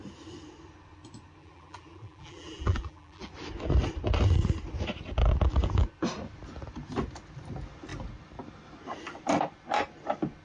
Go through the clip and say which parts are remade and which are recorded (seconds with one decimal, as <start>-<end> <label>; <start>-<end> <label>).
0.0-1.4 recorded; 1.4-3.3 remade; 3.3-10.4 recorded

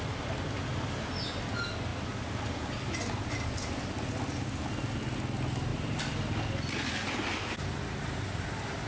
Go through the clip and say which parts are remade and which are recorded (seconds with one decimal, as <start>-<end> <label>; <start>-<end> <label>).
0.0-5.7 recorded; 5.7-6.3 remade; 6.3-8.9 recorded

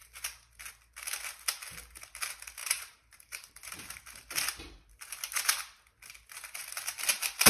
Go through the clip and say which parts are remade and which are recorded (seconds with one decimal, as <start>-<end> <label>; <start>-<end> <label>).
0.0-0.7 remade; 0.7-2.6 recorded; 2.6-3.8 remade; 3.8-7.5 recorded